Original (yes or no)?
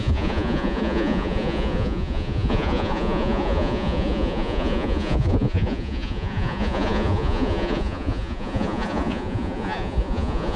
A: no